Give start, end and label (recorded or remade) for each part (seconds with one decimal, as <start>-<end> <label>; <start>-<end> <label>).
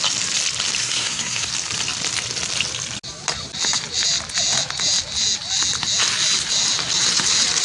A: 0.0-0.8 recorded; 0.8-1.5 remade; 1.5-7.6 recorded